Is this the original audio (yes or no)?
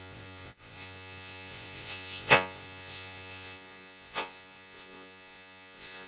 no